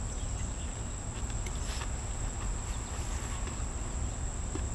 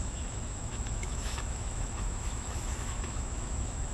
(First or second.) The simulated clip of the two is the second